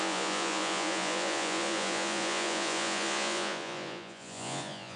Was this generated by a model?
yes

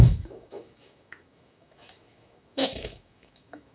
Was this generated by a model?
yes